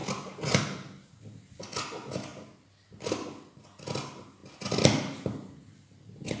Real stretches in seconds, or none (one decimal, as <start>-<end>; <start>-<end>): 0.0-6.4